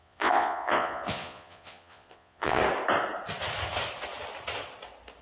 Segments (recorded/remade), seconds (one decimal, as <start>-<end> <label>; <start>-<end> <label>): 0.0-2.6 remade; 2.6-5.2 recorded